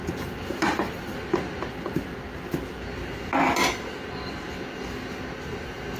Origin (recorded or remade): recorded